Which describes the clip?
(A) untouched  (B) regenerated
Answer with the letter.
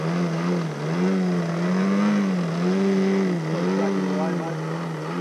A